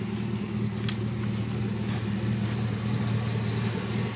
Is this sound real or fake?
real